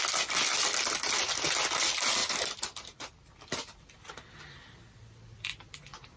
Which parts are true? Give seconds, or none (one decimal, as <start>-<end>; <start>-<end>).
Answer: 0.0-6.2

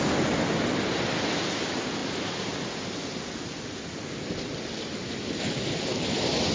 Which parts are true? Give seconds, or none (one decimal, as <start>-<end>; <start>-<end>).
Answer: 0.0-6.5